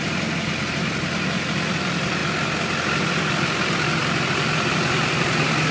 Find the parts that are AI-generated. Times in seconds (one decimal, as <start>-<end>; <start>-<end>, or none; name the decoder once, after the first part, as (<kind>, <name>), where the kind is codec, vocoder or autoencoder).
none